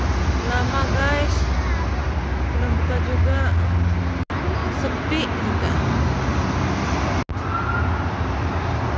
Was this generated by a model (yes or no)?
no